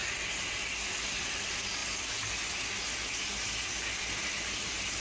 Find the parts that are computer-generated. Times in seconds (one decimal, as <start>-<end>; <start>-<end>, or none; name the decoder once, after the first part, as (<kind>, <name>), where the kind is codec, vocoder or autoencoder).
none

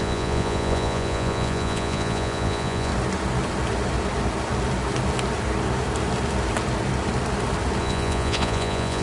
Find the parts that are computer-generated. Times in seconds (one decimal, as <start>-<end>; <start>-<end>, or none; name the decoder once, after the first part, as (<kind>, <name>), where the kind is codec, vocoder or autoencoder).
0.0-2.9 (vocoder, Vocos); 7.8-9.0